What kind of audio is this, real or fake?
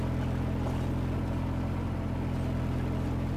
real